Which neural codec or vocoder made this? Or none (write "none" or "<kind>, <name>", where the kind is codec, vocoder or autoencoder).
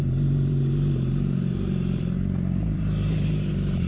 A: vocoder, BigVGAN v2